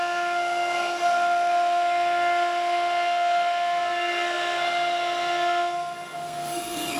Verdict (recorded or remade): remade